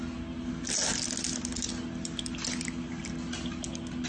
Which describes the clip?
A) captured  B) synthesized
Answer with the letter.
A